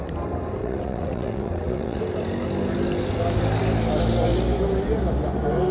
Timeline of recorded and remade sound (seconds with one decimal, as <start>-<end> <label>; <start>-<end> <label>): 0.0-0.6 recorded; 0.6-2.0 remade; 2.0-5.7 recorded

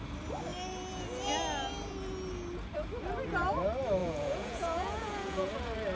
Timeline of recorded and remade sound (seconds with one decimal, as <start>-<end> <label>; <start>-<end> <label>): 0.0-4.0 recorded; 4.0-5.5 remade; 5.5-6.0 recorded

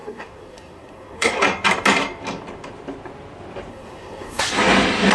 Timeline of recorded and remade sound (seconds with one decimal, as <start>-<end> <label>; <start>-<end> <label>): 0.0-1.4 remade; 1.4-3.7 recorded; 3.7-4.4 remade; 4.4-5.1 recorded